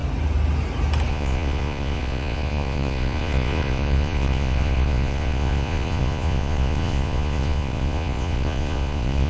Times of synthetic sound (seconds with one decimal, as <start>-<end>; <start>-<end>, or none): 1.1-9.3